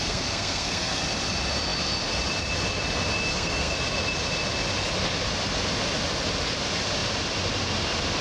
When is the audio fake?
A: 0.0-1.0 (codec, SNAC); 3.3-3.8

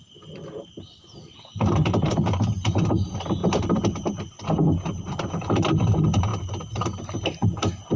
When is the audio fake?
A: none

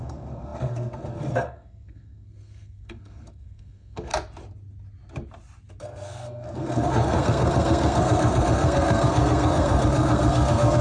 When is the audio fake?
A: 0.0-4.1 (codec, SNAC); 5.8-10.8